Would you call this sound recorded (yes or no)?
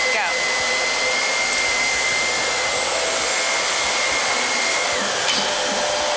yes